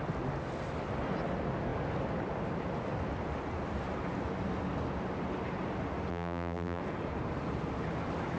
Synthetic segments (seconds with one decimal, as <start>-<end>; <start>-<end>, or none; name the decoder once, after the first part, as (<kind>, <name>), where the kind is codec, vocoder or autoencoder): 6.1-6.8 (vocoder, BigVGAN v2)